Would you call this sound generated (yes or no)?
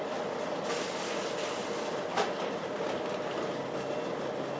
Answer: no